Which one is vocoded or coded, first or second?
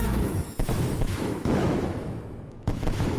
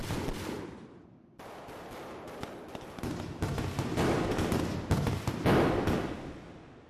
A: first